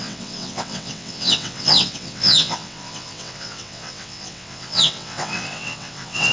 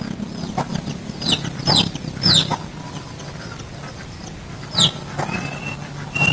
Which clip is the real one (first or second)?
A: second